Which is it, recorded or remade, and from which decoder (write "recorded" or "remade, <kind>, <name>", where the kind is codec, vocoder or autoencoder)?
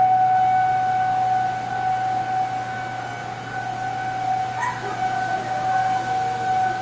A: recorded